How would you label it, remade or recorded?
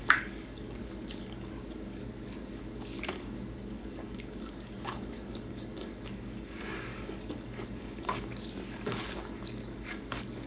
remade